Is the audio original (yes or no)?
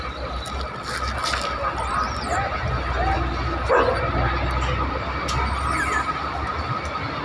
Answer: yes